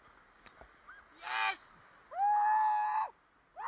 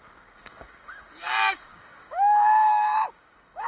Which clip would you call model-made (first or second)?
second